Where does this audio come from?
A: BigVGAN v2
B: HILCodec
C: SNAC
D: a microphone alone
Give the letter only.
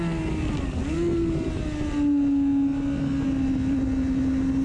D